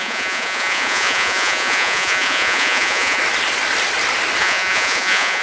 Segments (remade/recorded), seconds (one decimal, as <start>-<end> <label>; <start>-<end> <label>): 0.0-3.2 remade; 3.2-4.4 recorded; 4.4-5.4 remade